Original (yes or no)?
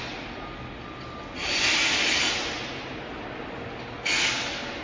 yes